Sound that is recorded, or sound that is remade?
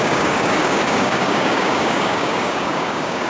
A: remade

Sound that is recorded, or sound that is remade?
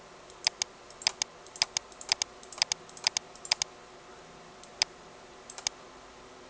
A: recorded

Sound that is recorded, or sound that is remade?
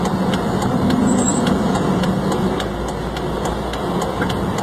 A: recorded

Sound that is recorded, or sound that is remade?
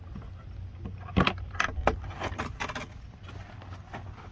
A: recorded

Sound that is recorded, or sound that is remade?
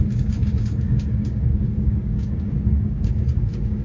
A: remade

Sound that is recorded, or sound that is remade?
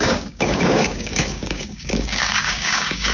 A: remade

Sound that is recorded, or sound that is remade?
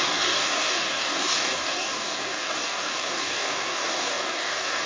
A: remade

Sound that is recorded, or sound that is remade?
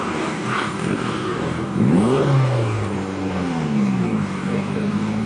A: remade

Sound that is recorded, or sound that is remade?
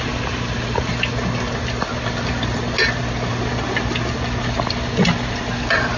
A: recorded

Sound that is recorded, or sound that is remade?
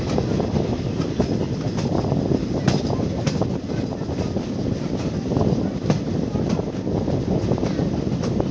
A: recorded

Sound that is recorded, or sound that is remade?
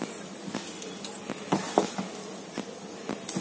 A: recorded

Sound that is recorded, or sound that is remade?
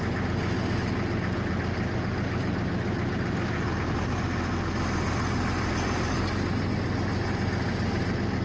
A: recorded